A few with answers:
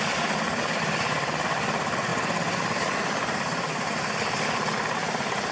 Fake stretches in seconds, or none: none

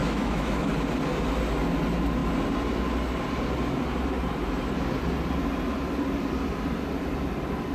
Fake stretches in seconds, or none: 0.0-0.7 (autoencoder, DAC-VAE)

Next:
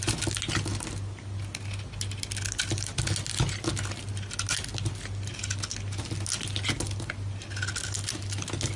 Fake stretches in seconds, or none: none

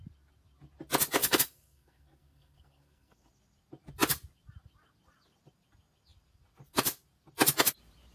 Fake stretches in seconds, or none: 1.2-3.3 (codec, SNAC)

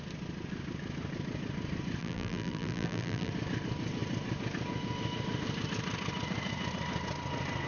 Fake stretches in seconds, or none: 2.0-3.3 (vocoder, BigVGAN v2)